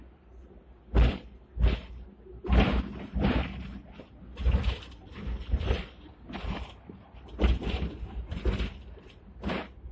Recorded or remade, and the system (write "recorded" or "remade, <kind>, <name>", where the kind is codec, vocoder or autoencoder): recorded